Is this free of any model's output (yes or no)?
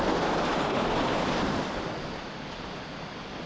yes